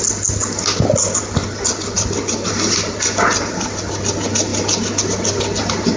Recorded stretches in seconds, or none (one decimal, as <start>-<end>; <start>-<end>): 0.0-6.0